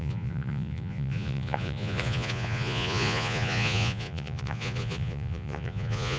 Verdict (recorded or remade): remade